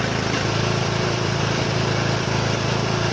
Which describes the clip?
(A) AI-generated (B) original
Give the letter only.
A